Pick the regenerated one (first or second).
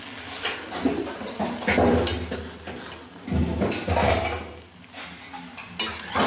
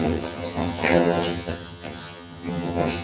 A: second